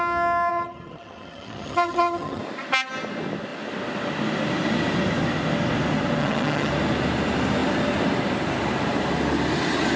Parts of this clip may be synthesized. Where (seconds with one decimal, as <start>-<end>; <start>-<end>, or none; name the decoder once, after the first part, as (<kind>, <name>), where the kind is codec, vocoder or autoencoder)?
0.5-2.4 (vocoder, HiFi-GAN); 6.2-6.7